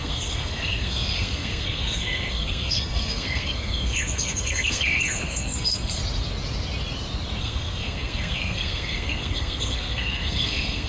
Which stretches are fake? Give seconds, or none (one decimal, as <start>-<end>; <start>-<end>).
0.0-6.0; 7.4-10.9